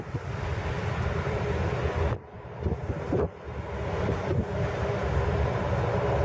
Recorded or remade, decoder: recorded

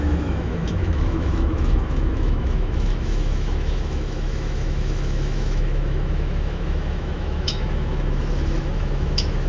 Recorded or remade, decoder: remade, autoencoder, DAC-VAE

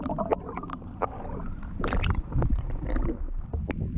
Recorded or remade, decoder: recorded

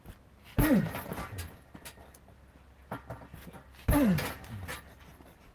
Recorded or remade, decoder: recorded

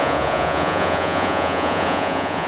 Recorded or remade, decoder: remade, vocoder, Vocos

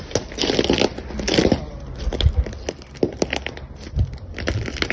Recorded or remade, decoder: recorded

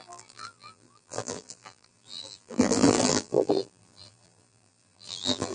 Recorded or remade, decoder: remade, vocoder, BigVGAN v2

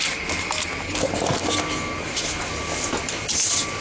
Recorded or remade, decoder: recorded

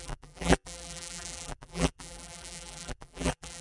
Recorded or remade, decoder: remade, vocoder, BigVGAN v2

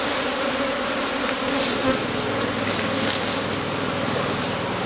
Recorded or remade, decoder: recorded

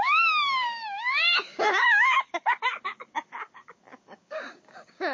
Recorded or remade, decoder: remade, codec, DAC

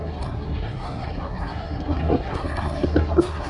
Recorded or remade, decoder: remade, codec, SNAC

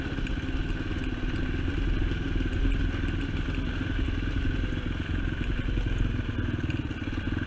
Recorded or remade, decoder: recorded